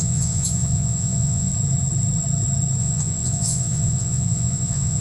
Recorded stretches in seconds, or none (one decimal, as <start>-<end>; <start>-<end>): 1.5-2.8